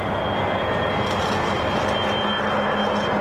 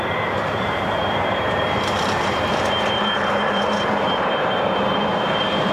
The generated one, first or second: second